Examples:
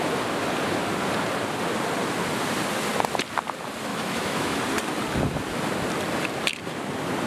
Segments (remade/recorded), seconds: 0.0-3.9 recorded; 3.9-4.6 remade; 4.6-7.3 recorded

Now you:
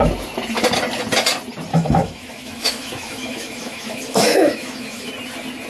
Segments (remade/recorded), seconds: 0.0-1.7 recorded; 1.7-5.1 remade; 5.1-5.7 recorded

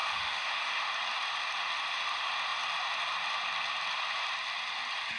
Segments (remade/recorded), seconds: 0.0-0.9 remade; 0.9-5.2 recorded

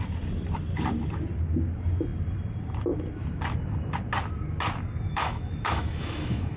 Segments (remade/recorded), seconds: 0.0-5.1 recorded; 5.1-6.6 remade

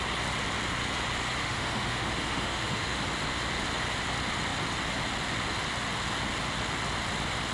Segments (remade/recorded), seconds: 0.0-1.4 recorded; 1.4-3.0 remade; 3.0-7.5 recorded

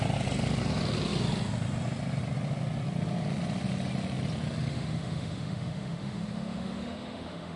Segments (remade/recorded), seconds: 0.0-4.7 recorded; 4.7-7.6 remade